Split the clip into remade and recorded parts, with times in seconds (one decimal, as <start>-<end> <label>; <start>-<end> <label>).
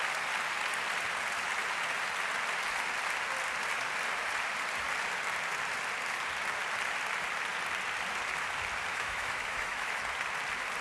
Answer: 0.0-8.9 recorded; 8.9-10.0 remade; 10.0-10.8 recorded